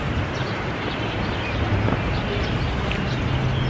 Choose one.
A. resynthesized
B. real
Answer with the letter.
B